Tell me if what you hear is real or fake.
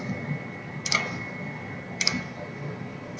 real